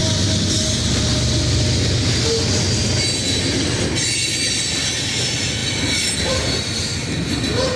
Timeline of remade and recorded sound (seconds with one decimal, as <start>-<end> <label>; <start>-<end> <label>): 0.0-7.8 recorded